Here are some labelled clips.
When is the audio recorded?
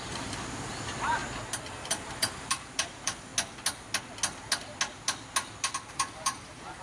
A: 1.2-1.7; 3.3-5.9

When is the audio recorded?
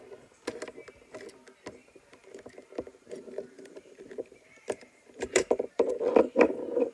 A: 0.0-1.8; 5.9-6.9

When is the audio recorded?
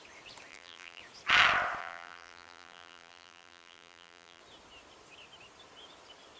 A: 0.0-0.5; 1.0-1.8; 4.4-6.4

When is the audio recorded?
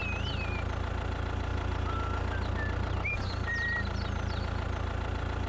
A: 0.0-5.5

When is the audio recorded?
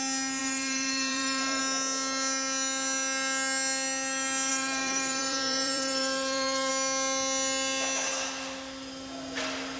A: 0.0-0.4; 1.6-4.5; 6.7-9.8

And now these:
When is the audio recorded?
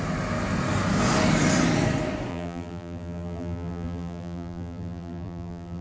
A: 0.0-2.3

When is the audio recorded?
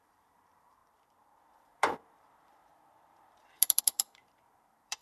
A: none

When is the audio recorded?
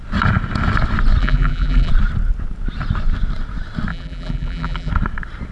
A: 0.0-1.2; 1.9-3.9; 4.9-5.5